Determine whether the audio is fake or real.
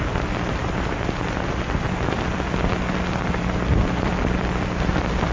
real